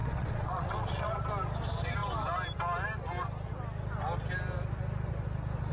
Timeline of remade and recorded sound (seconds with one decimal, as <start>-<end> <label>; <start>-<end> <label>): 0.0-1.1 remade; 1.1-5.7 recorded